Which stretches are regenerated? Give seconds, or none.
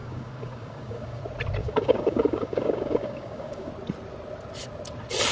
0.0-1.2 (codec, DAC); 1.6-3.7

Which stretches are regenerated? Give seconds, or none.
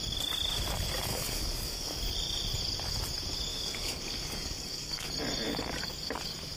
1.1-2.0 (codec, DAC); 3.5-5.1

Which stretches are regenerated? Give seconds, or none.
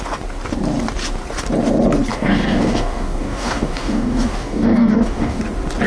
2.1-5.4 (codec, DAC)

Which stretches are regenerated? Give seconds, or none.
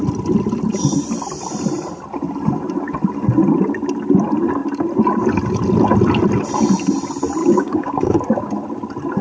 7.4-8.2 (codec, DAC)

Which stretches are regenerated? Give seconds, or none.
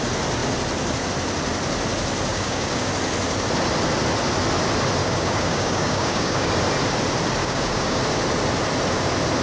2.3-2.9 (codec, DAC); 5.0-6.5; 7.4-8.0